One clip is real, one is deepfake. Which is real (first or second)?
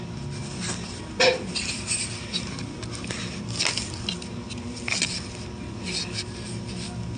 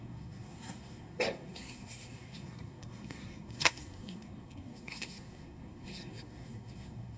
first